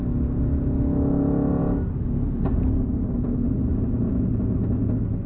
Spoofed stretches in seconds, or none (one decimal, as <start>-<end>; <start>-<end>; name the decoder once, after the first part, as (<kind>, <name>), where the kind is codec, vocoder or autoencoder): none